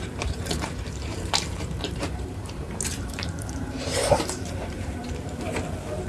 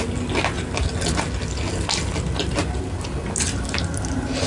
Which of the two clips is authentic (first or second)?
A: second